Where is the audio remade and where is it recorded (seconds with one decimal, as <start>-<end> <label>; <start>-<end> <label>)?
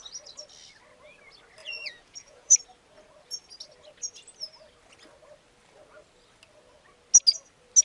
0.0-1.6 recorded; 1.6-2.6 remade; 2.6-7.8 recorded